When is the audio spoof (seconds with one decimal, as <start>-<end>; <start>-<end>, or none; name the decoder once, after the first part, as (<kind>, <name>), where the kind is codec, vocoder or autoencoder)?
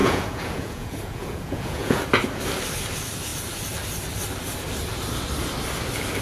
0.0-2.0 (vocoder, Vocos)